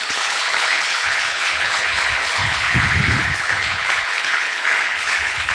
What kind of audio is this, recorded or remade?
remade